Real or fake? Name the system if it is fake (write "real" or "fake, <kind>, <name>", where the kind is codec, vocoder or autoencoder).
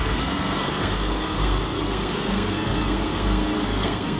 fake, codec, SNAC